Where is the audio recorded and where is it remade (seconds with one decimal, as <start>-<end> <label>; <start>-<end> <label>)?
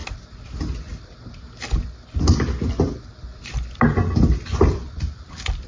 0.0-3.4 recorded; 3.4-5.7 remade